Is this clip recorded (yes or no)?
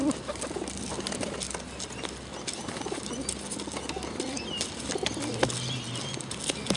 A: yes